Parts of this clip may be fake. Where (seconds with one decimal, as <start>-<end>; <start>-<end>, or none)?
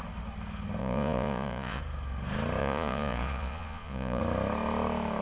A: 0.8-1.8; 2.6-4.2